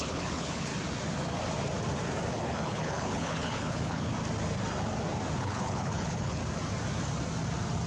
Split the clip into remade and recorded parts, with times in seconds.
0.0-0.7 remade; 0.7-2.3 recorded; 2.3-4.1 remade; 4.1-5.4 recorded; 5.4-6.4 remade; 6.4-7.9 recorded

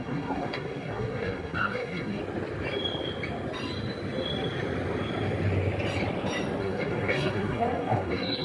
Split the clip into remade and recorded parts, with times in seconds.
0.0-2.2 remade; 2.2-6.6 recorded; 6.6-8.4 remade

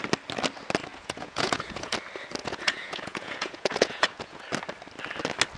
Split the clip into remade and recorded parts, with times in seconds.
0.0-0.9 recorded; 0.9-1.9 remade; 1.9-2.4 recorded; 2.4-4.4 remade; 4.4-5.6 recorded

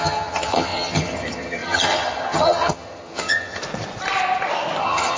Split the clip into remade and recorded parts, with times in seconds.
0.0-3.6 remade; 3.6-4.8 recorded; 4.8-5.2 remade

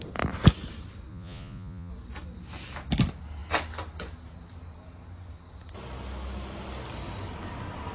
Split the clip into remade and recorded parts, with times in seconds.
0.0-1.1 recorded; 1.1-1.9 remade; 1.9-7.9 recorded

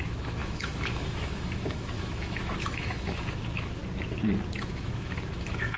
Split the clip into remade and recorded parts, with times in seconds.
0.0-3.8 remade; 3.8-4.6 recorded; 4.6-5.8 remade